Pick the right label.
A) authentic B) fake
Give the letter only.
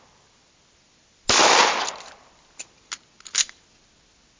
A